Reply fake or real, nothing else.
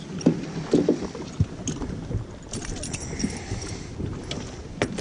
real